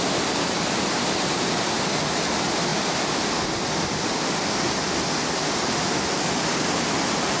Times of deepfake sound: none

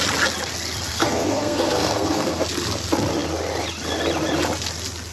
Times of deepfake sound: 0.9-2.4 (codec, SNAC)